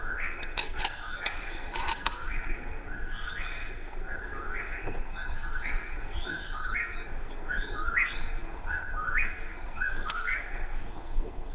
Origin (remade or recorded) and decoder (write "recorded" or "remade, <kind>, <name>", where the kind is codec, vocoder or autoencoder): remade, codec, SNAC